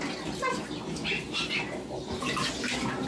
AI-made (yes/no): no